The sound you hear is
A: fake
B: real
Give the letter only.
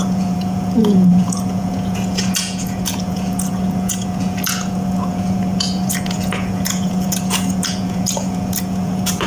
A